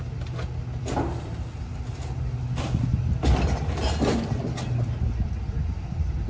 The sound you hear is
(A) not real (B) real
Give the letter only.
B